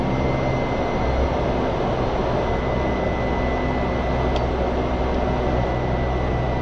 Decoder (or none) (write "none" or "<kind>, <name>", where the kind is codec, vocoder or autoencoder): none